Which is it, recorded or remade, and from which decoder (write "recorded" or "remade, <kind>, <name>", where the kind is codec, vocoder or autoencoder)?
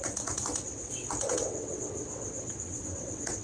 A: remade, vocoder, WaveNeXt